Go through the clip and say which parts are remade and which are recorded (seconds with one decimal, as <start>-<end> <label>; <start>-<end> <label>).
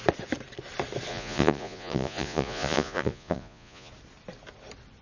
0.0-1.1 recorded; 1.1-3.9 remade; 3.9-5.0 recorded